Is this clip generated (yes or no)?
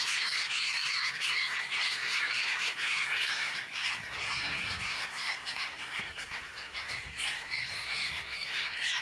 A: yes